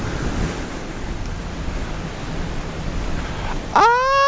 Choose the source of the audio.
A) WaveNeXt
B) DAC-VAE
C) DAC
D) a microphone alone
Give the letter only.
D